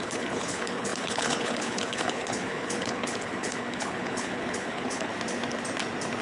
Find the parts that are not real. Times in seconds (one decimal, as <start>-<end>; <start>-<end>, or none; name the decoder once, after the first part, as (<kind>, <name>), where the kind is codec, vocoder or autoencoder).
0.0-5.1 (codec, HILCodec)